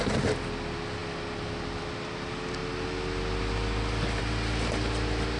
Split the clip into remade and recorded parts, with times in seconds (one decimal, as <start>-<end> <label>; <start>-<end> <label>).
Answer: 0.0-5.4 recorded